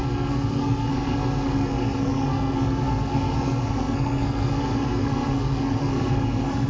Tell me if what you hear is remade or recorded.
remade